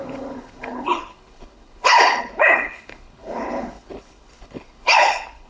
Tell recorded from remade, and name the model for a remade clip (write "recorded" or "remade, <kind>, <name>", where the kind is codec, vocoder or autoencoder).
remade, codec, HILCodec